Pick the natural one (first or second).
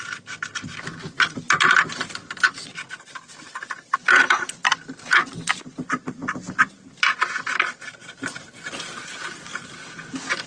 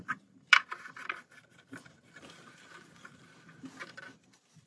first